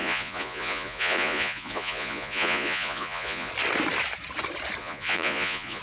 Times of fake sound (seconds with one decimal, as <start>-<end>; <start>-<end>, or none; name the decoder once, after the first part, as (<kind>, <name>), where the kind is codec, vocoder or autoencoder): 0.0-3.5 (vocoder, Vocos); 4.8-5.8